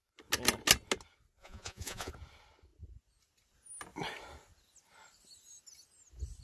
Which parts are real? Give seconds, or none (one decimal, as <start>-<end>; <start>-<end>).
0.0-1.4; 2.1-6.4